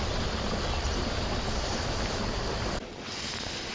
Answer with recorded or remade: recorded